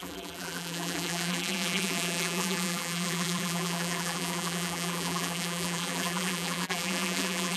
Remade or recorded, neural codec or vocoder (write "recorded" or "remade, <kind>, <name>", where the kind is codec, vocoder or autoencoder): remade, vocoder, BigVGAN v2